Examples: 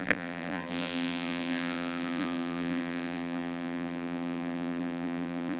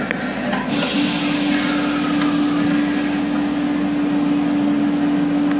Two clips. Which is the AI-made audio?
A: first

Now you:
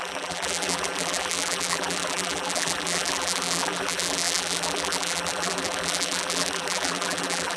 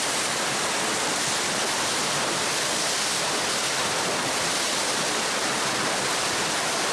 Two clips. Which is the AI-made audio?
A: first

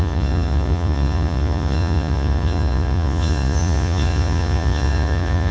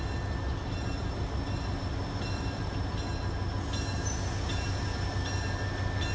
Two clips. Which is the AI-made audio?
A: first